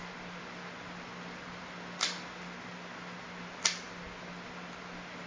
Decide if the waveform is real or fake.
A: real